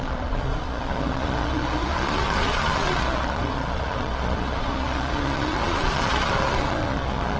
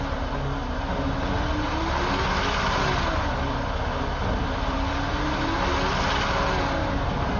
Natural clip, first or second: second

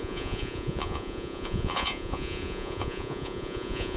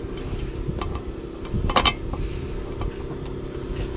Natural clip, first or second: second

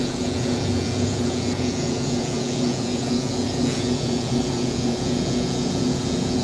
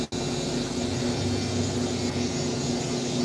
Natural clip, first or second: second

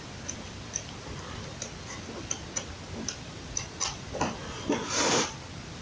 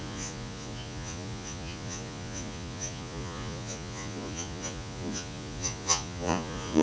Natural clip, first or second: first